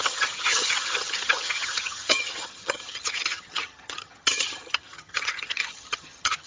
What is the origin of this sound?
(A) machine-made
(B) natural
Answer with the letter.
A